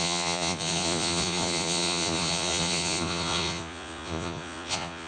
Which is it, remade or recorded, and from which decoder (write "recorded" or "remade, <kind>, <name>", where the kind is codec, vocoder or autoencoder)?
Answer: remade, vocoder, Vocos